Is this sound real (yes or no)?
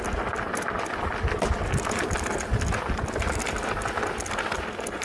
yes